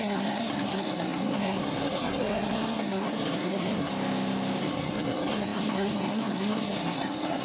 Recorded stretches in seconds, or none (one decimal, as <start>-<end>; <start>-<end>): 3.9-4.6